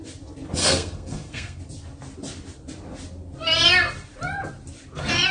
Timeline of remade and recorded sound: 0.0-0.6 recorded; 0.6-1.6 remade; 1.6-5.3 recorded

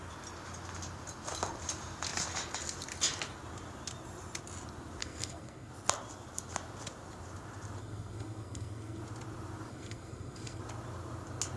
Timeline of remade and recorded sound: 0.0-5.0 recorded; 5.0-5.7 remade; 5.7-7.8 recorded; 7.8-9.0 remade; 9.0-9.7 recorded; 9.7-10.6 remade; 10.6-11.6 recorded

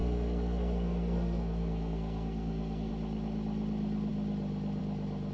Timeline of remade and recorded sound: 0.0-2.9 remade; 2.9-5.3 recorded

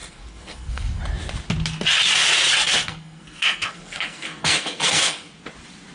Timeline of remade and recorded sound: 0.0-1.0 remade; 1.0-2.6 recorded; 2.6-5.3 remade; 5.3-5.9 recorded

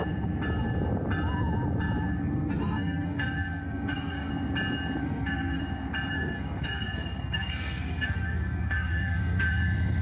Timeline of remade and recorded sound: 0.0-2.2 recorded; 2.2-4.3 remade; 4.3-5.0 recorded; 5.0-5.6 remade; 5.6-6.1 recorded; 6.1-9.6 remade; 9.6-10.0 recorded

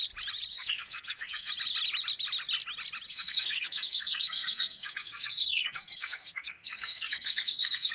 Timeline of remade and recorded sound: 0.0-0.5 recorded; 0.5-1.5 remade; 1.5-3.1 recorded; 3.1-7.9 remade

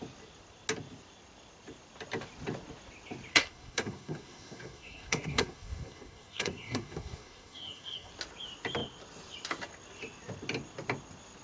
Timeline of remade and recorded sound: 0.0-3.3 recorded; 3.3-8.1 remade; 8.1-11.4 recorded